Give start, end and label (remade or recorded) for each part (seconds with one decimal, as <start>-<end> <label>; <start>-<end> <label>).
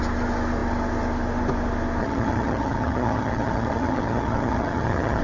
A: 0.0-2.0 recorded; 2.0-5.2 remade